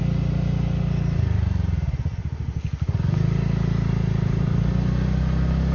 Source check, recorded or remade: recorded